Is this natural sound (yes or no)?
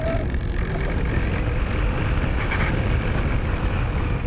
yes